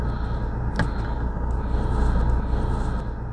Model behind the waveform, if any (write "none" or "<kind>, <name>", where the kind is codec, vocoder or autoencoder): none